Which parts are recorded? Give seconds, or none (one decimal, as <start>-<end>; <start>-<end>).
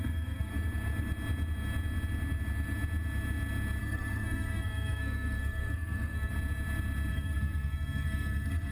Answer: 0.5-3.8; 6.3-7.1